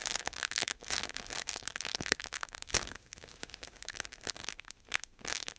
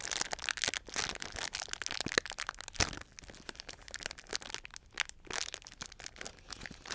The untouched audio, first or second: second